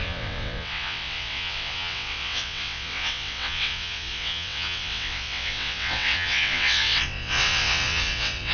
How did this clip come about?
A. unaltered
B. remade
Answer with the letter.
B